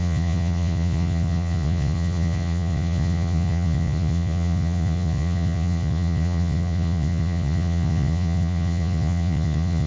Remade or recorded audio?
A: remade